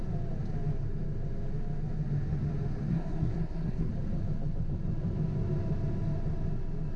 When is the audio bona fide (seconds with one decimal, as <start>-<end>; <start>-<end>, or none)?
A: 0.0-2.9; 3.9-7.0